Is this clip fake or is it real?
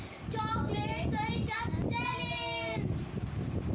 real